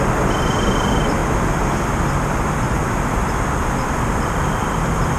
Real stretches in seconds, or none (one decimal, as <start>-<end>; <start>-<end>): 0.0-5.2